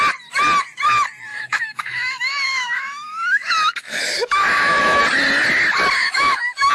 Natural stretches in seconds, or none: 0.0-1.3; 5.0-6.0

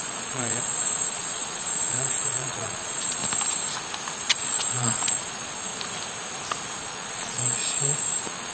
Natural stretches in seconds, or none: 3.2-4.2; 5.7-6.8

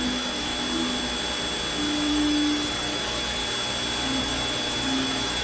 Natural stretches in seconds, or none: 0.5-2.1; 3.4-4.2

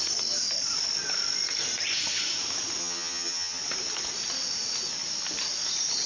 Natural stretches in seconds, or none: 0.0-2.8; 3.6-6.1

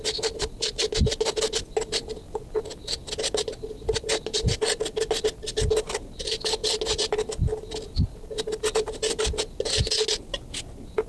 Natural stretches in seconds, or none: 0.0-11.1

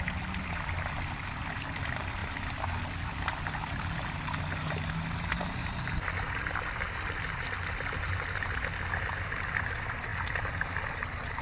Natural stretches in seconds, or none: 0.0-11.4

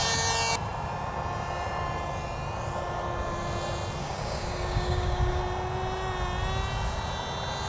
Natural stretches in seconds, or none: 0.0-4.0; 5.4-7.7